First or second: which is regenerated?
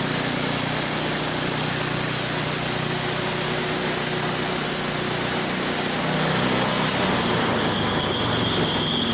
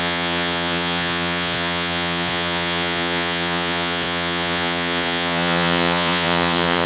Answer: second